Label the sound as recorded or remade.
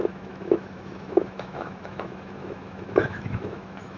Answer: remade